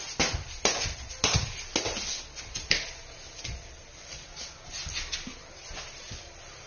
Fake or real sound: real